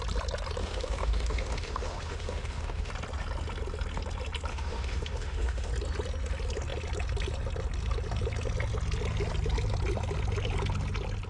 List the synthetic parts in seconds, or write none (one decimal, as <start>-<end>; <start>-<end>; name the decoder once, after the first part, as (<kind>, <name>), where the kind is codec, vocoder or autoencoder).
0.6-2.9 (autoencoder, DAC-VAE); 4.5-5.7